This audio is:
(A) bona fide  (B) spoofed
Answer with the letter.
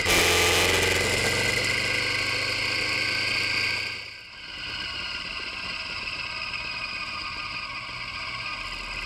A